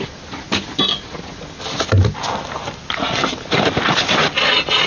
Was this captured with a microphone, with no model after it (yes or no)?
yes